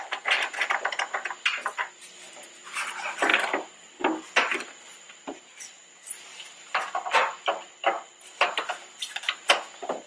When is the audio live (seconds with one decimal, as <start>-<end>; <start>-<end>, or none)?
0.0-3.3; 3.9-4.9; 5.5-6.3; 9.0-10.1